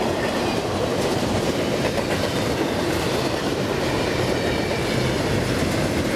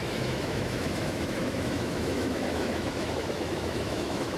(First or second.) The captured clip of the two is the first